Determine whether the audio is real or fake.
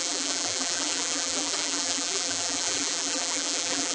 fake